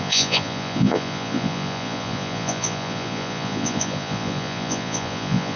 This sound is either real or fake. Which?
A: fake